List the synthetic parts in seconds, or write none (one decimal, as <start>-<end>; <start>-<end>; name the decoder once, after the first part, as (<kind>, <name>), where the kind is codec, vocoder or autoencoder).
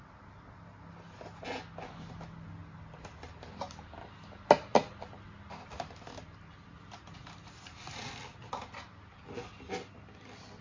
none